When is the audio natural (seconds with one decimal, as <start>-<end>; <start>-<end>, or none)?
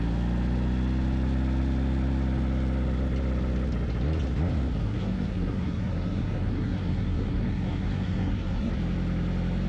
0.0-4.8; 8.7-9.7